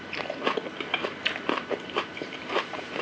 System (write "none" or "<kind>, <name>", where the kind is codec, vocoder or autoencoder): vocoder, BigVGAN v2